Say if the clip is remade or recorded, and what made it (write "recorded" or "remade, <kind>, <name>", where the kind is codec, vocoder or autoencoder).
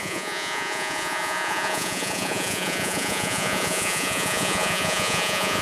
remade, vocoder, Vocos